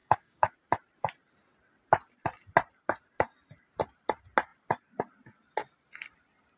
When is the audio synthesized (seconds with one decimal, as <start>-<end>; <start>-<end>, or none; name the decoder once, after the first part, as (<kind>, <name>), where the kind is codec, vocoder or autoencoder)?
0.0-0.5 (codec, DAC)